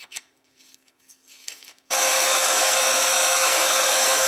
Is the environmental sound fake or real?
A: fake